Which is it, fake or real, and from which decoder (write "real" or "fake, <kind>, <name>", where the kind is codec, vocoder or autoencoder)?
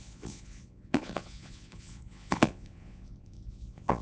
fake, vocoder, Vocos